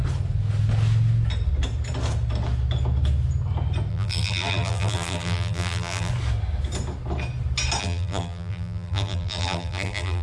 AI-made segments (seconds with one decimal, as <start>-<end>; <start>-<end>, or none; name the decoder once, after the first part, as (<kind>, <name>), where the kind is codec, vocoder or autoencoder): 3.9-6.1 (vocoder, BigVGAN v2); 7.8-10.2